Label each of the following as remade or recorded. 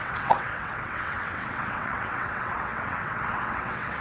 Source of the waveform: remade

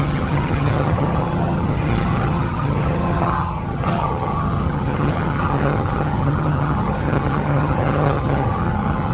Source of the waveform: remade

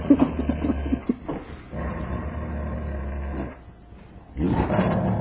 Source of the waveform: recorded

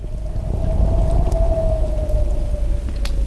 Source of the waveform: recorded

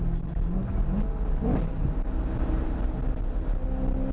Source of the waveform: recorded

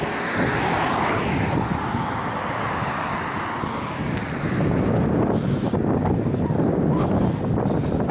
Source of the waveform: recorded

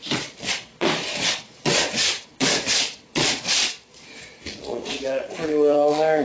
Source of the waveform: remade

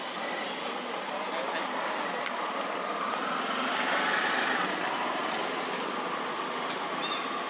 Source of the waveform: recorded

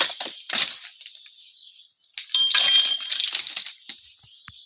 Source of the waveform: recorded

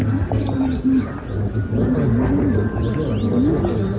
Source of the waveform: recorded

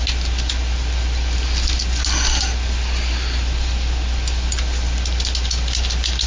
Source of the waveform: recorded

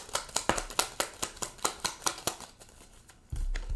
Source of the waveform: recorded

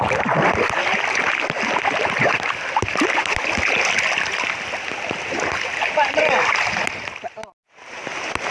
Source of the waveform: recorded